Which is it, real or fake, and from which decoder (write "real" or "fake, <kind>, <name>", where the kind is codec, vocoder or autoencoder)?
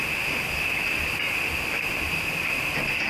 real